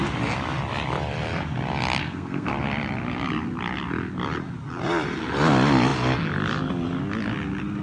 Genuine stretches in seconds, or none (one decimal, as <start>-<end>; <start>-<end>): 0.0-2.0; 2.5-7.8